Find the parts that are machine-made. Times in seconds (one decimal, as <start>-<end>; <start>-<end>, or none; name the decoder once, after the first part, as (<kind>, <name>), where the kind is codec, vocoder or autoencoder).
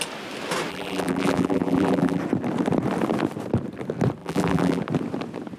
0.7-2.2 (vocoder, BigVGAN v2); 4.2-4.8